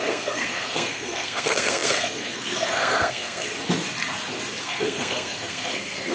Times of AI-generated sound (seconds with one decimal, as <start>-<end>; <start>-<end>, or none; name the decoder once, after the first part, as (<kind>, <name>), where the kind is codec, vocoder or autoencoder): 0.0-3.5 (codec, SNAC); 4.6-6.1